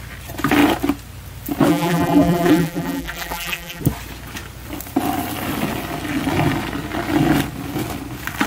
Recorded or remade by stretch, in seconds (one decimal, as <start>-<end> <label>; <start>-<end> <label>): 0.0-1.7 recorded; 1.7-3.8 remade; 3.8-8.5 recorded